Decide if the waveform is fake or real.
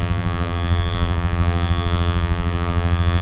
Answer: fake